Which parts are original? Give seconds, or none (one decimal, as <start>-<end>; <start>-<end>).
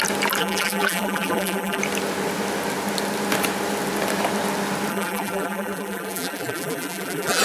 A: 0.0-0.4; 1.8-4.9